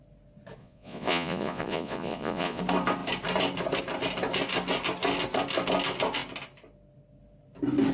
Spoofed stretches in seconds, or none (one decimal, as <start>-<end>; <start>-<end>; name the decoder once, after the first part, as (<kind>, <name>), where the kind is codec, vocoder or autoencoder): 0.6-2.6 (vocoder, Vocos)